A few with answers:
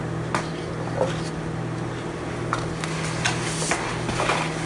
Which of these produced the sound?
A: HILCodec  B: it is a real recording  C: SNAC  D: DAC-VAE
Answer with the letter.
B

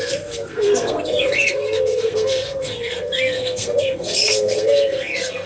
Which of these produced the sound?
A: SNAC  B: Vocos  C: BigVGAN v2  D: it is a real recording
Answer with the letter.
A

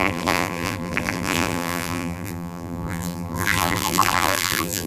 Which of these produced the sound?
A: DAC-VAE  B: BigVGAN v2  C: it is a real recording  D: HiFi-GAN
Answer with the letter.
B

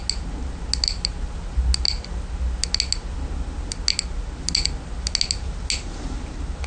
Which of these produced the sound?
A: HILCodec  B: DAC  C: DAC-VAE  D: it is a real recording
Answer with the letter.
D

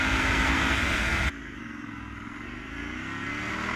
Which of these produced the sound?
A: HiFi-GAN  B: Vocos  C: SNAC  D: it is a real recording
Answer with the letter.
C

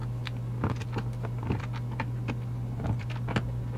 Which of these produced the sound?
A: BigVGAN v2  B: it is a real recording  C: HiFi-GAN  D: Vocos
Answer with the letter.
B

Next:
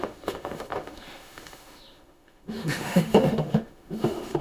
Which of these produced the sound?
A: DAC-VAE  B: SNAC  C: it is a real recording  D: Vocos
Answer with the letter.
A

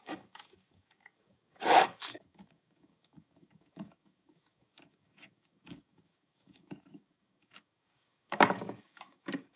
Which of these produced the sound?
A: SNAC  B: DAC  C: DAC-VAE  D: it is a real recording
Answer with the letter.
B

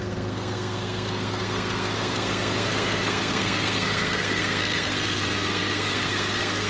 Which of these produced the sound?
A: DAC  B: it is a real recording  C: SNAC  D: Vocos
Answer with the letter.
C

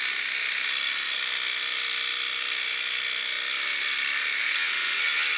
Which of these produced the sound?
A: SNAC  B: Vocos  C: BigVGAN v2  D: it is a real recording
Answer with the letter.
D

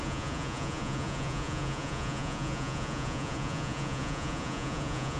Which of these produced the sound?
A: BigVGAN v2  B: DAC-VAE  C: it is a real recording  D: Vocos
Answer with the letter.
D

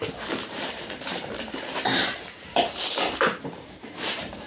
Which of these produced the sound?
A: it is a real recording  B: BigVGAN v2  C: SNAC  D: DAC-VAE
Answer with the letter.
B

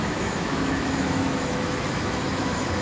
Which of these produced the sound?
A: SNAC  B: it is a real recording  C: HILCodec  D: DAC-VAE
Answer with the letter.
D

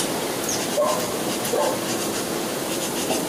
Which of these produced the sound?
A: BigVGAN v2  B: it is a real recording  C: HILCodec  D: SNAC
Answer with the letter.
A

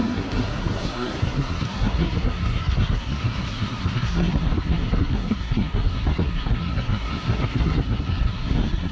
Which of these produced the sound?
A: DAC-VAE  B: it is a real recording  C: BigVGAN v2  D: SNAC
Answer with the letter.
D